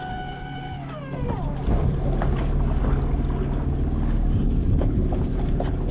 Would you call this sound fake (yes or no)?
no